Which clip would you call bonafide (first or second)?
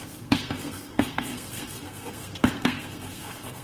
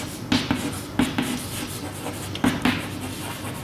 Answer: second